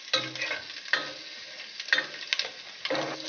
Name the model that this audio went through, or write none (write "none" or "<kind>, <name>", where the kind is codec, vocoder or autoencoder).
none